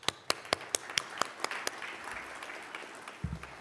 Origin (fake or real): real